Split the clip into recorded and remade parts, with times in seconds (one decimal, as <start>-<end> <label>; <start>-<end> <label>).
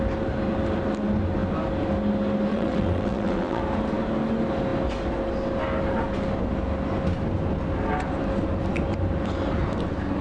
0.0-2.5 recorded; 2.5-3.6 remade; 3.6-10.2 recorded